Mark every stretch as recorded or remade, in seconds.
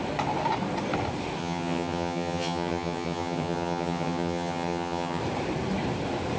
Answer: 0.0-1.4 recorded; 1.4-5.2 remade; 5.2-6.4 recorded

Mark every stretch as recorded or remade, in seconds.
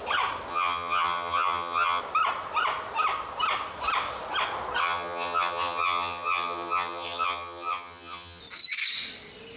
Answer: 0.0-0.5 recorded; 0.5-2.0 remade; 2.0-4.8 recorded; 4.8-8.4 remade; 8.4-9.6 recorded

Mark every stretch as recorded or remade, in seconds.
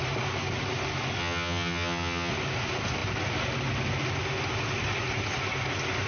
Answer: 0.0-1.2 recorded; 1.2-2.3 remade; 2.3-6.1 recorded